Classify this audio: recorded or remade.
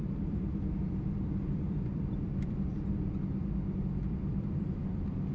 remade